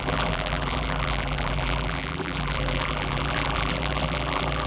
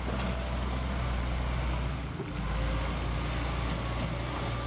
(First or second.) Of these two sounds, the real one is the second